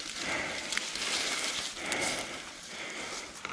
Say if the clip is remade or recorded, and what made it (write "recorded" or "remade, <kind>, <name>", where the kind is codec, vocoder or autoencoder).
recorded